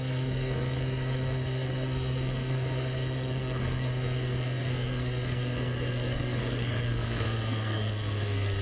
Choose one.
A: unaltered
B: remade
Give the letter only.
B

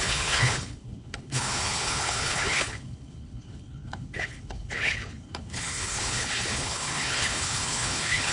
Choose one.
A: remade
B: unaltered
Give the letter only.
A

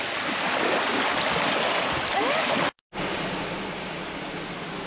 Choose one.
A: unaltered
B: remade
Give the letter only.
A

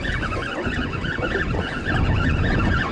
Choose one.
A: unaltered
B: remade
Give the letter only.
B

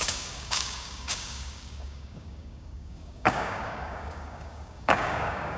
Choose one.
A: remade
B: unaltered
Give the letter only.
A